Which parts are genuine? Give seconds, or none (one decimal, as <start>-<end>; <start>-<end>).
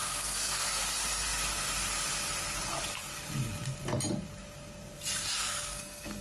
0.8-5.4